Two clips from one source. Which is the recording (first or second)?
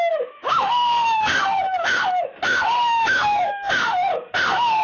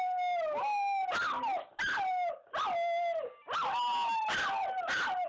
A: second